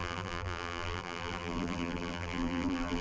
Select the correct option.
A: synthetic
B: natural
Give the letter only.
A